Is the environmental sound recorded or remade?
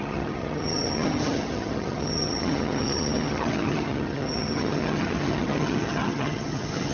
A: remade